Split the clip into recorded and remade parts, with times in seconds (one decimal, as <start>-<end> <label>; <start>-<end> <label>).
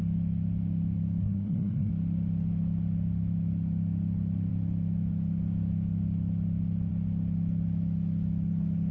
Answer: 0.0-1.2 recorded; 1.2-1.9 remade; 1.9-8.9 recorded